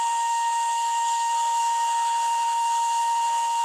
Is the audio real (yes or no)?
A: no